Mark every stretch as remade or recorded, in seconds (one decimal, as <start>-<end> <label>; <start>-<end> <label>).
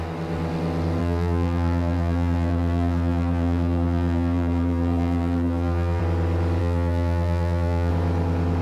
0.0-1.0 recorded; 1.0-6.0 remade; 6.0-6.6 recorded; 6.6-7.9 remade; 7.9-8.6 recorded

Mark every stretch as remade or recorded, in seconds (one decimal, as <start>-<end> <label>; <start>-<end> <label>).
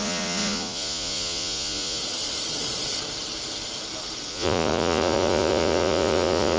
0.0-2.0 remade; 2.0-4.3 recorded; 4.3-6.6 remade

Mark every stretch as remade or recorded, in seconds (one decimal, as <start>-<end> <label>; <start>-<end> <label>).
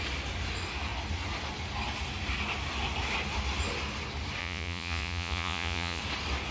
0.0-4.4 recorded; 4.4-6.0 remade; 6.0-6.5 recorded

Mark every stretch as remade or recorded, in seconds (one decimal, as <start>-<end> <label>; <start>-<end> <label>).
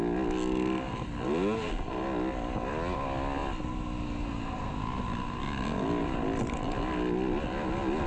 0.0-8.1 recorded